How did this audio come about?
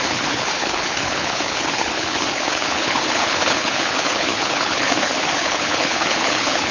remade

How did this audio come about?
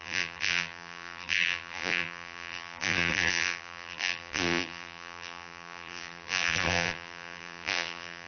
remade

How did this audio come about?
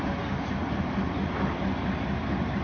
recorded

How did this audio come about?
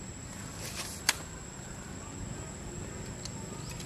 recorded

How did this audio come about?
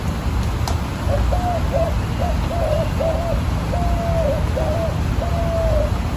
recorded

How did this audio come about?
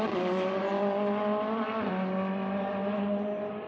recorded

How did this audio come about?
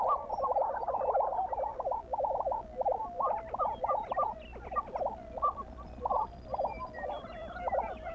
remade